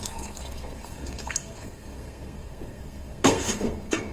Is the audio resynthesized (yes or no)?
yes